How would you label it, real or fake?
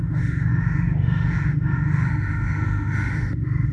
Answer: fake